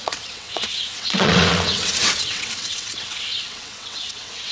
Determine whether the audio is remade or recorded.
remade